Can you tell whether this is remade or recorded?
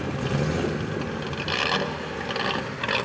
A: recorded